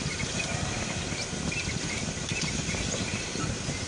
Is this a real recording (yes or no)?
yes